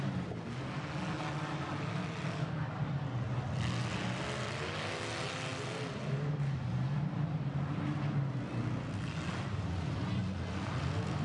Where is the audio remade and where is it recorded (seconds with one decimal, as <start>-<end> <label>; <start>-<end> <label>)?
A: 0.0-11.2 recorded